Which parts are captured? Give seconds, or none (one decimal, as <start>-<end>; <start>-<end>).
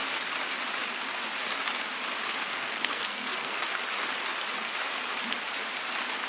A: 0.0-2.4; 3.6-6.3